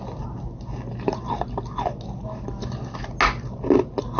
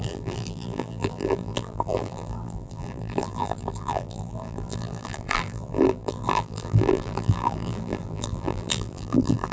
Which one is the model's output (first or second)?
second